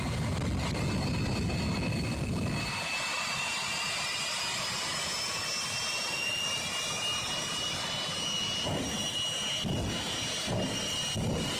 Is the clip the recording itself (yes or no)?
yes